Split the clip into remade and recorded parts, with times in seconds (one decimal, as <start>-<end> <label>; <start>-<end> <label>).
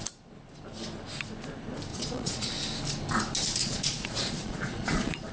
0.0-1.9 recorded; 1.9-2.5 remade; 2.5-3.6 recorded; 3.6-5.3 remade